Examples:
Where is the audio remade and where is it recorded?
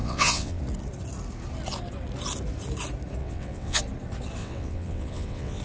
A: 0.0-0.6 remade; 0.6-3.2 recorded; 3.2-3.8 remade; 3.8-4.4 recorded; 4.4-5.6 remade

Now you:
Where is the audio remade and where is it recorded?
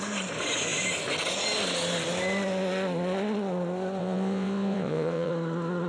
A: 0.0-4.0 recorded; 4.0-5.3 remade; 5.3-5.9 recorded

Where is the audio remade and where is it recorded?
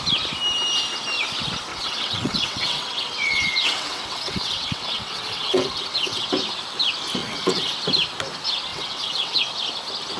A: 0.0-1.7 recorded; 1.7-6.3 remade; 6.3-7.2 recorded; 7.2-7.7 remade; 7.7-8.7 recorded; 8.7-9.4 remade; 9.4-10.2 recorded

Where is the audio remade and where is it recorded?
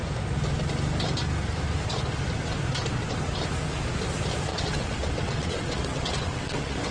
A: 0.0-4.5 recorded; 4.5-6.9 remade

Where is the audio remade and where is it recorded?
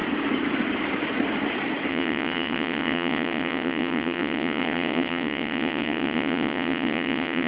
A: 0.0-1.9 recorded; 1.9-7.5 remade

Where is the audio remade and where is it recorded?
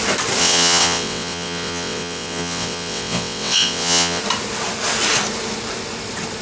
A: 0.0-0.4 recorded; 0.4-4.2 remade; 4.2-6.4 recorded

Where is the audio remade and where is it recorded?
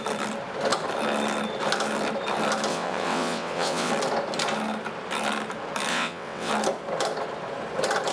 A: 0.0-2.7 recorded; 2.7-3.9 remade; 3.9-5.9 recorded; 5.9-6.5 remade; 6.5-8.1 recorded